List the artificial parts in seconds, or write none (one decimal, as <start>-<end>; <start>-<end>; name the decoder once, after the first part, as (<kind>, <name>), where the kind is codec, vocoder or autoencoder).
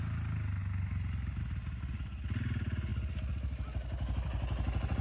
none